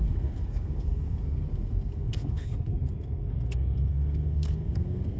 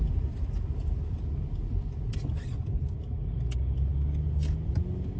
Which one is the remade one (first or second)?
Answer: first